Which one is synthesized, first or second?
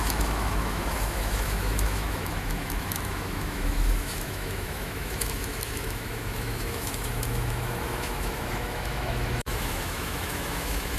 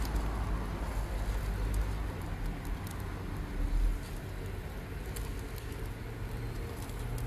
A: first